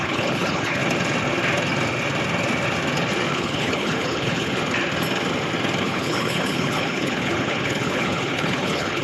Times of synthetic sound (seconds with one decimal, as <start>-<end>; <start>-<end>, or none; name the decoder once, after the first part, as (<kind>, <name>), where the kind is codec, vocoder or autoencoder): 0.0-0.8 (codec, HILCodec); 3.3-4.5; 5.8-9.0